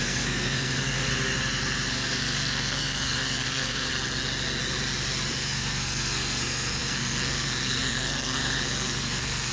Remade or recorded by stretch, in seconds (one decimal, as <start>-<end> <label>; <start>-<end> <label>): 0.0-1.1 remade; 1.1-1.9 recorded; 1.9-3.9 remade; 3.9-5.3 recorded; 5.3-9.5 remade